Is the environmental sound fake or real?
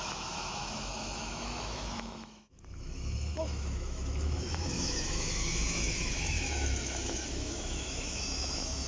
fake